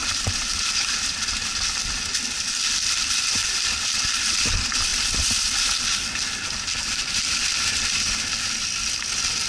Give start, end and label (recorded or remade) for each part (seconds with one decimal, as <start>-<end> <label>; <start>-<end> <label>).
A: 0.0-1.5 recorded; 1.5-3.4 remade; 3.4-4.3 recorded; 4.3-4.9 remade; 4.9-9.5 recorded